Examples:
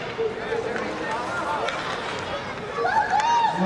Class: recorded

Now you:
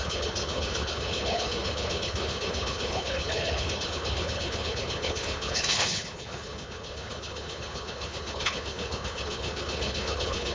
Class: remade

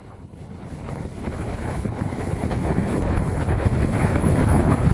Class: remade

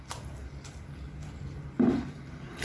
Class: recorded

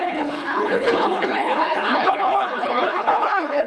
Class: remade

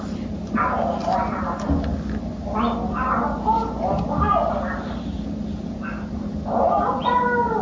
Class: recorded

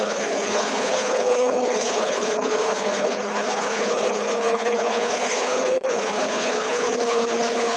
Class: remade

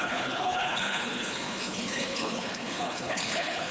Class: remade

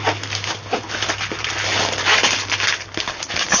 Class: recorded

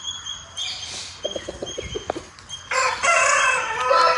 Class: recorded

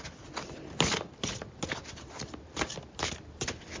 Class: recorded